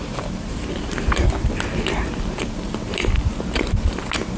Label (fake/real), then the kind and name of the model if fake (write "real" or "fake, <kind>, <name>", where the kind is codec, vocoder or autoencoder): real